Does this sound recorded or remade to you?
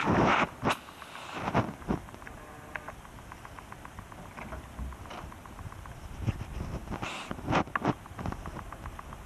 recorded